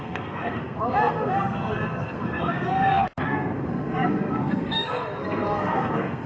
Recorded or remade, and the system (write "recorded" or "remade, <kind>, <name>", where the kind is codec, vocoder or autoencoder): remade, codec, SNAC